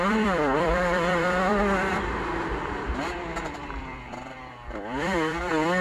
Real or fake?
fake